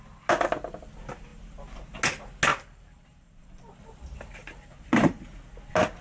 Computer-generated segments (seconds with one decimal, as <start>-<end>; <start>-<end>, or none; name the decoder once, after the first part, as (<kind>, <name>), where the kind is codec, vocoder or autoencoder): 2.5-3.8 (vocoder, BigVGAN v2); 4.4-5.2